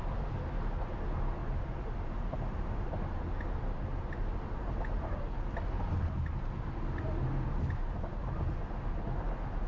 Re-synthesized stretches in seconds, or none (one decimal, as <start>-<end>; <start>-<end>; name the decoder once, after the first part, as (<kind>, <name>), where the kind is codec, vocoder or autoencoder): none